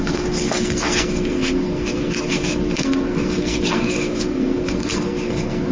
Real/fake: fake